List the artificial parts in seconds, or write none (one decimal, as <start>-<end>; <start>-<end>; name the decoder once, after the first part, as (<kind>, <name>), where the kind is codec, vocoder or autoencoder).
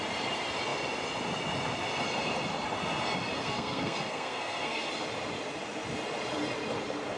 3.4-4.9 (codec, SNAC)